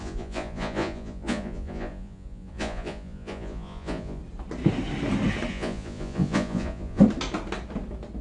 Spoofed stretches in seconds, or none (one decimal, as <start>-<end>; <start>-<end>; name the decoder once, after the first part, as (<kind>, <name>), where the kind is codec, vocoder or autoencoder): 0.0-4.2 (vocoder, Vocos); 5.5-7.0